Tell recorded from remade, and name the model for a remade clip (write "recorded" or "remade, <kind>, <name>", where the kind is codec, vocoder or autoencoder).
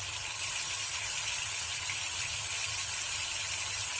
recorded